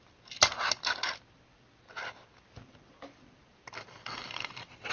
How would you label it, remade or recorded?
recorded